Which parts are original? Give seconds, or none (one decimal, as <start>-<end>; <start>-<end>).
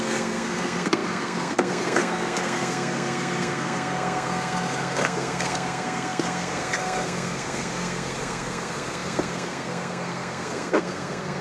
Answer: none